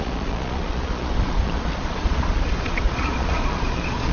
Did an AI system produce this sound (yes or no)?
yes